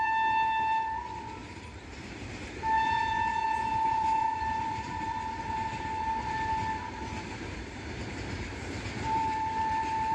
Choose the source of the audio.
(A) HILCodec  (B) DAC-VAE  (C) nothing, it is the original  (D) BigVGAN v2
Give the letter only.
D